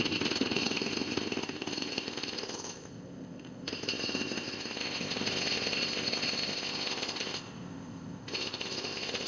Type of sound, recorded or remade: remade